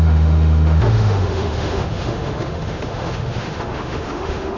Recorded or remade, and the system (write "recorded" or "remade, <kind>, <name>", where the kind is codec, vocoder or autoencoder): remade, autoencoder, DAC-VAE